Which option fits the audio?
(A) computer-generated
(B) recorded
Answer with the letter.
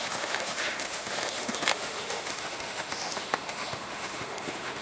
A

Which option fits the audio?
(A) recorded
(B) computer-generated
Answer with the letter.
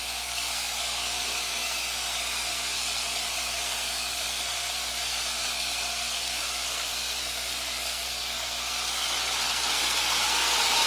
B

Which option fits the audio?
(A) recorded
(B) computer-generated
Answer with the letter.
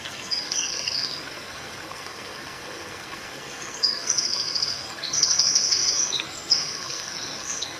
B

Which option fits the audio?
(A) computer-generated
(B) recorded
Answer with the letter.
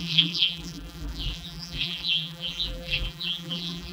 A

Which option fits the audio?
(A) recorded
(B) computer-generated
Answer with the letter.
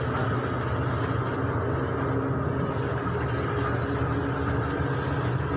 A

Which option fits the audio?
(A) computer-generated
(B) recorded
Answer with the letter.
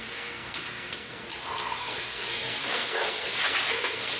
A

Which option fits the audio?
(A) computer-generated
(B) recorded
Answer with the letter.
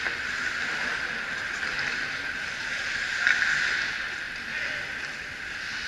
B